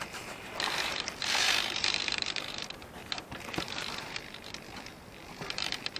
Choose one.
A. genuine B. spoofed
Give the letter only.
B